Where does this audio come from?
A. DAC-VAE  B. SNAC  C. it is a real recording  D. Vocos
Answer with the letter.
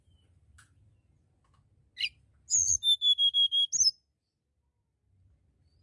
C